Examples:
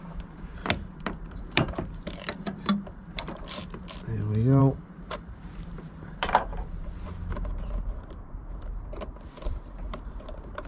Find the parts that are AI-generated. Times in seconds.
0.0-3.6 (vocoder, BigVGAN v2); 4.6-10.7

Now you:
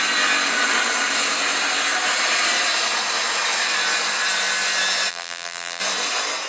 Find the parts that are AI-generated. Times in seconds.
5.1-5.8 (vocoder, BigVGAN v2)

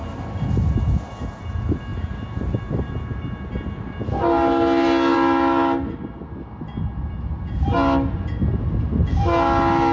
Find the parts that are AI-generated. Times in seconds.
none

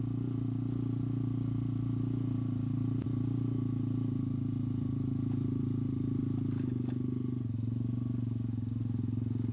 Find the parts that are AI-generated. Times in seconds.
0.0-6.2 (vocoder, BigVGAN v2); 8.8-9.5

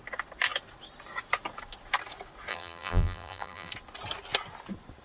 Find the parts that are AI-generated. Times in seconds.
2.5-3.7 (vocoder, BigVGAN v2)